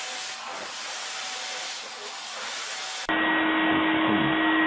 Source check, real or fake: real